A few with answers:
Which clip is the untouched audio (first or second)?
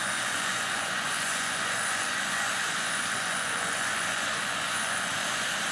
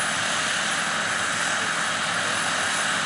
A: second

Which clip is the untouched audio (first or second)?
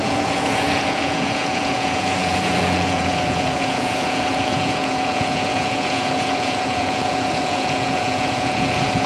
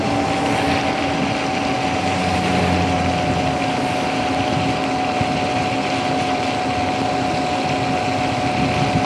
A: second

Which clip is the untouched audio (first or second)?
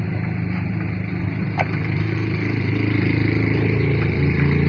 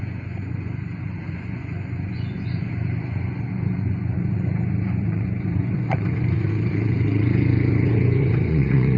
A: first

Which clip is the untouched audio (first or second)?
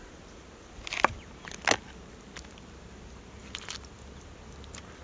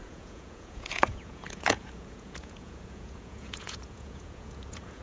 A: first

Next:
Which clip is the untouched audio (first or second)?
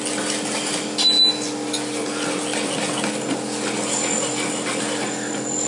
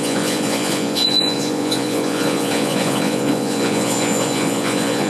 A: first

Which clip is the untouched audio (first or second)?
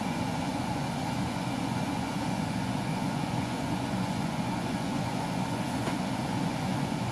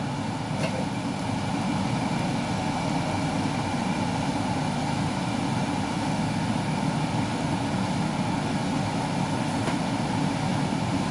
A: second